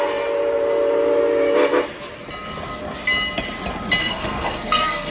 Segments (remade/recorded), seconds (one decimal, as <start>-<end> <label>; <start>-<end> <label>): 0.0-4.0 recorded; 4.0-5.1 remade